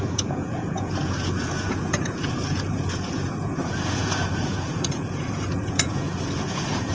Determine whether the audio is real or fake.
fake